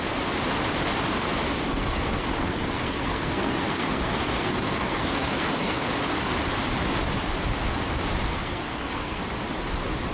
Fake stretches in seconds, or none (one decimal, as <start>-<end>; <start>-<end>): 1.7-5.9; 8.3-9.2